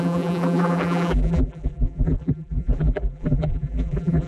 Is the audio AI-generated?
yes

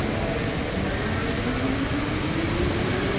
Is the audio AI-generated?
no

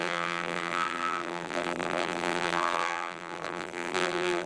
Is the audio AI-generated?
yes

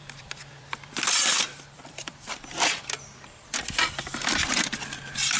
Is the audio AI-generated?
yes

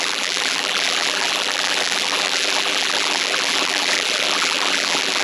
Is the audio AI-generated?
yes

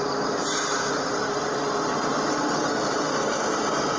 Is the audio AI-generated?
yes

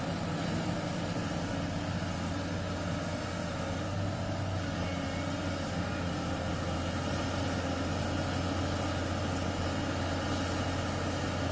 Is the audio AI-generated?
no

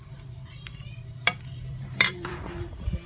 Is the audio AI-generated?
yes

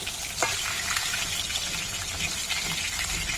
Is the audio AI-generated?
no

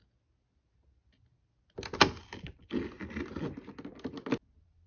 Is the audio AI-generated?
no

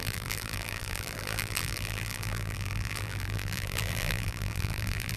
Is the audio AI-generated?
yes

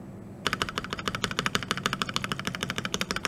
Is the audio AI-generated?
no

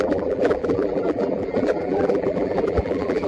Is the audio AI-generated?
yes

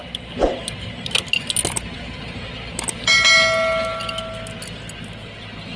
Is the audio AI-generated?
no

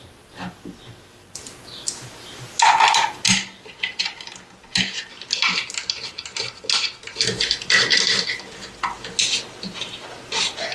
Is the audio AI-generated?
no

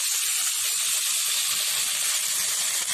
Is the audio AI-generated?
no